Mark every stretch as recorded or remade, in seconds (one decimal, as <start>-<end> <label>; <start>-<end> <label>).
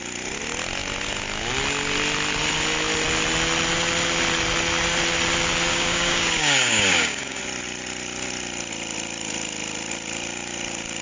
0.0-5.7 recorded; 5.7-7.4 remade; 7.4-11.0 recorded